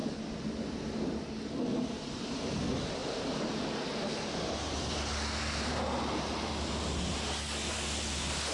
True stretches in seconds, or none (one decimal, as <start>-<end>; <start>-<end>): 0.0-1.7; 2.6-3.0; 6.5-8.5